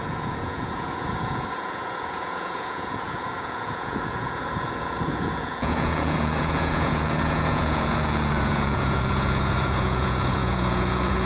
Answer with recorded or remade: remade